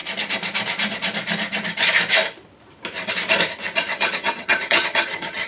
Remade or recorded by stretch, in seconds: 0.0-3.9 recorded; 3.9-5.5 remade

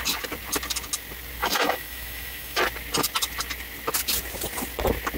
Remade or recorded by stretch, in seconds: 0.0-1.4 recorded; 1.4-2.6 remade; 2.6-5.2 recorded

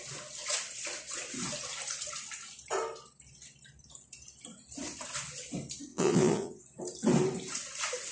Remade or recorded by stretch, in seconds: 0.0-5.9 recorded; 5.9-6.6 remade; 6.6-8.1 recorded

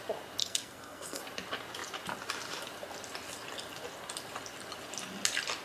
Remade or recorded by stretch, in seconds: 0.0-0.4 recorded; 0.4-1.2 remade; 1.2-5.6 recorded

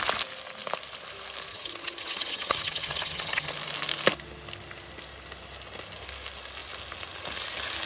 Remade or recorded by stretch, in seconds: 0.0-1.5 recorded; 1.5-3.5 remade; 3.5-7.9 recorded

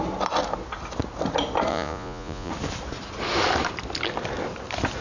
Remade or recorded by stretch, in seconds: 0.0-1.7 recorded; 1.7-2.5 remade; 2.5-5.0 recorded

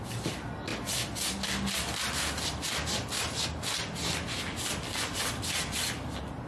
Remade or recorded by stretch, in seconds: 0.0-6.5 recorded

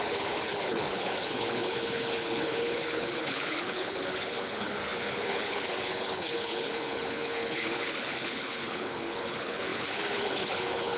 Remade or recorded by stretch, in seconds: 0.0-11.0 remade